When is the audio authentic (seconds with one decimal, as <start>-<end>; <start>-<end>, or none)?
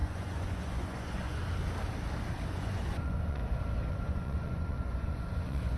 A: 1.4-2.5; 3.4-3.9